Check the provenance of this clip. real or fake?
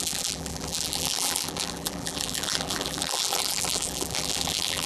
fake